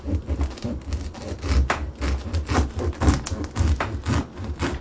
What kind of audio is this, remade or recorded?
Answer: recorded